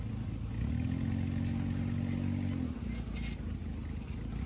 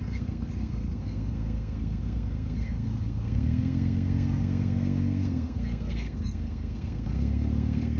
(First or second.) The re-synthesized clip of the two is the second